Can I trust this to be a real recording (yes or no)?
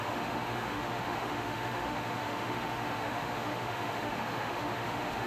no